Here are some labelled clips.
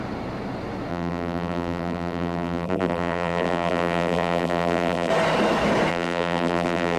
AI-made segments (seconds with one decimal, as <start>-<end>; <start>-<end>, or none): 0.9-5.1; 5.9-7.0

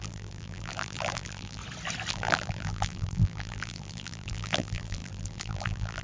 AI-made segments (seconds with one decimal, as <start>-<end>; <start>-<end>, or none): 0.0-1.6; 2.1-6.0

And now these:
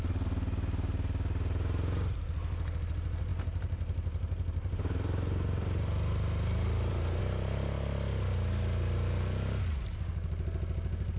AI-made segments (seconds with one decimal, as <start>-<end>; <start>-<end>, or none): 3.3-7.2

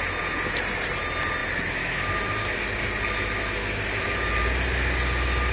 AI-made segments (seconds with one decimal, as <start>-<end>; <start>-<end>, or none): none

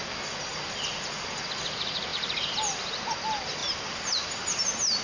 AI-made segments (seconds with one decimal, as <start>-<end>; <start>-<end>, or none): 3.6-4.4